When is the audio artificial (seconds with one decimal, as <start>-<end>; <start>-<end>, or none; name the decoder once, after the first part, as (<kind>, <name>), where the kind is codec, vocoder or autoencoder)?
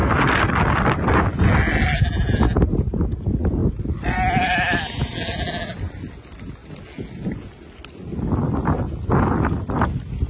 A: none